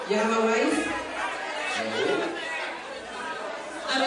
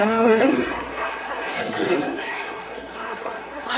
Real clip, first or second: first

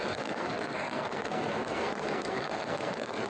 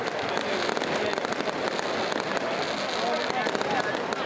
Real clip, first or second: second